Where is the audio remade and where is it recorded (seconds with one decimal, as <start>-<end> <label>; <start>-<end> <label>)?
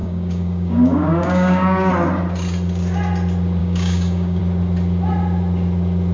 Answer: 0.0-1.9 remade; 1.9-3.6 recorded; 3.6-4.4 remade; 4.4-6.1 recorded